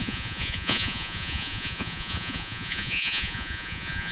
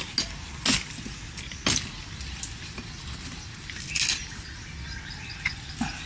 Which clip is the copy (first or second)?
first